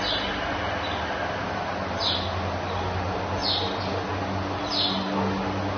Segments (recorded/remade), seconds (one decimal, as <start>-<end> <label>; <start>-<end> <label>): 0.0-5.8 recorded